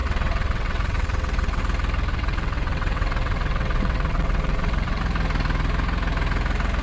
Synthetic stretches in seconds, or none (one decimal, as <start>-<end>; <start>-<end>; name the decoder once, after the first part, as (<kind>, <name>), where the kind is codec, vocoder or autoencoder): 0.0-1.6 (vocoder, WaveNeXt); 2.1-5.0